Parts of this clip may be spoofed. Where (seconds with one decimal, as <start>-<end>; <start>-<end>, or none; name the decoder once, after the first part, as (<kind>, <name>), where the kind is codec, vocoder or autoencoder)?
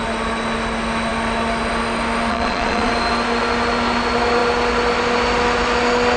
2.3-2.9 (vocoder, Vocos)